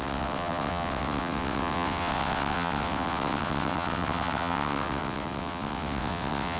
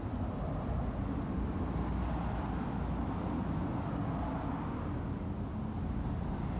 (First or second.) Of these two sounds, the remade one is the first